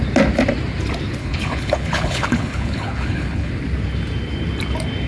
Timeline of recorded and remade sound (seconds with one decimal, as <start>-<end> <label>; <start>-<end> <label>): 0.0-1.2 recorded; 1.2-3.5 remade; 3.5-5.1 recorded